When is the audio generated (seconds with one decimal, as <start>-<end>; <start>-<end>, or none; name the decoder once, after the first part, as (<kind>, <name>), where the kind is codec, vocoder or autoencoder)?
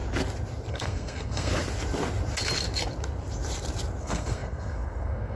0.7-1.5 (codec, SNAC); 4.0-5.4